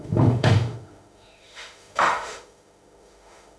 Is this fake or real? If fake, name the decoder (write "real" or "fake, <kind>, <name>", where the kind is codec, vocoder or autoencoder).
fake, autoencoder, DAC-VAE